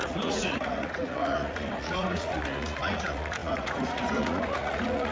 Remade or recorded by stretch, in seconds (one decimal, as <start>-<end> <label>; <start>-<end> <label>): 0.0-5.1 remade